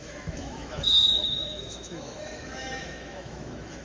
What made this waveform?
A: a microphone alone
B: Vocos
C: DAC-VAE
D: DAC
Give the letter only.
C